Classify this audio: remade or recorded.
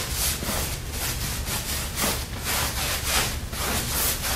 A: recorded